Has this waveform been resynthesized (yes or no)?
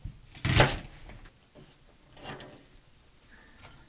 no